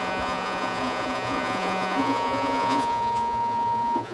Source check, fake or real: fake